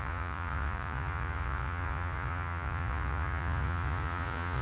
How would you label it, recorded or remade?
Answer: remade